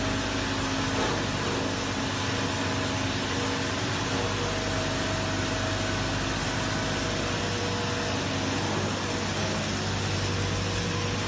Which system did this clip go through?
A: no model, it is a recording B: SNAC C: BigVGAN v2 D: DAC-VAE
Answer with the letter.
A